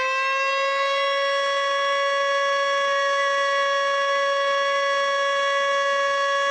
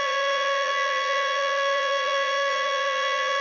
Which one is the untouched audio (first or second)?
first